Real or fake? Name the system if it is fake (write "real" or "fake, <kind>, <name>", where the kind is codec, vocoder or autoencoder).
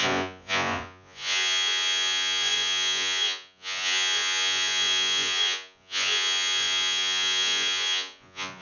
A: fake, vocoder, Vocos